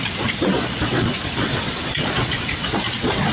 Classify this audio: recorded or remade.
remade